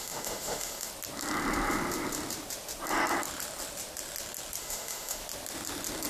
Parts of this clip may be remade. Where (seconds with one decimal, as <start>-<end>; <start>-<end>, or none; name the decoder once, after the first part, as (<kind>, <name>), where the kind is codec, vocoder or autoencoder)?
0.0-0.9 (autoencoder, DAC-VAE); 4.6-5.2